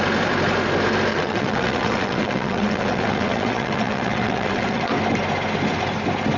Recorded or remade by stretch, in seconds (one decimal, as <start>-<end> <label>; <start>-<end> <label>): 0.0-1.1 recorded; 1.1-4.9 remade; 4.9-6.4 recorded